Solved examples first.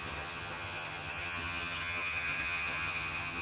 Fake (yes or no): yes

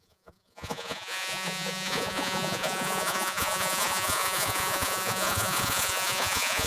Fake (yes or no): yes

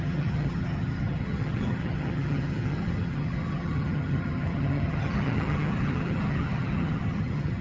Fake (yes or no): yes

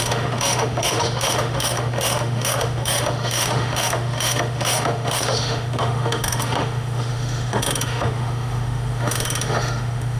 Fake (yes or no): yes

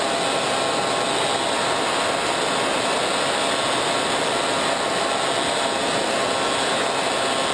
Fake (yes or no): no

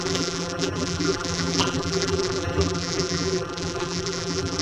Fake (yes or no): yes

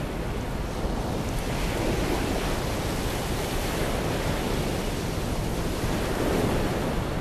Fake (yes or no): no